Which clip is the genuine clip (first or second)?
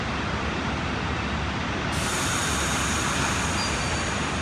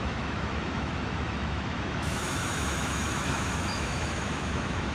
first